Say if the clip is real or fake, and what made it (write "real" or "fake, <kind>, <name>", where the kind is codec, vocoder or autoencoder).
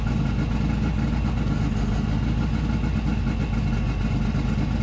real